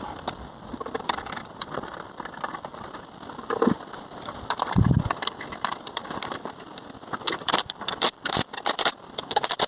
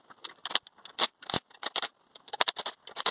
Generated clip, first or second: first